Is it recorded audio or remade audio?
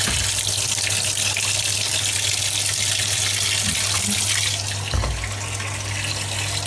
recorded